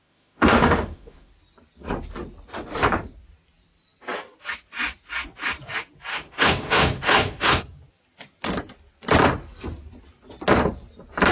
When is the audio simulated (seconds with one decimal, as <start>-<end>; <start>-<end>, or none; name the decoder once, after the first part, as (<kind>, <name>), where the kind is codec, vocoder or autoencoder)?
0.0-1.3 (autoencoder, DAC-VAE); 6.1-7.6